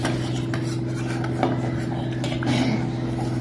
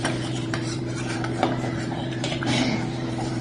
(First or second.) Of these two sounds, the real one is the first